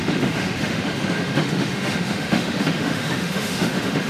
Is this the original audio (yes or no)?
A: no